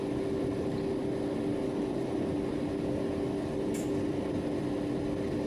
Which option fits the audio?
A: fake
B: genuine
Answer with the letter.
B